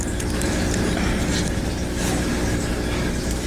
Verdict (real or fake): real